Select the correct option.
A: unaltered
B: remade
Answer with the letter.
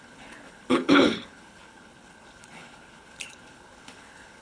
B